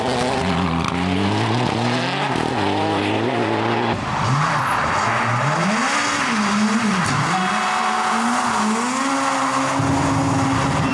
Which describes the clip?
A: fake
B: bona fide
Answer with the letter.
B